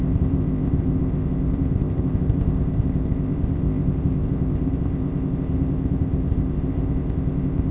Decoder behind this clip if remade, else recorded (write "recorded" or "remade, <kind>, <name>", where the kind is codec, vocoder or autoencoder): remade, codec, ZipCodec